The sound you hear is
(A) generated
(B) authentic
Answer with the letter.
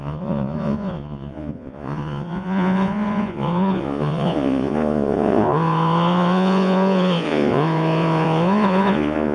A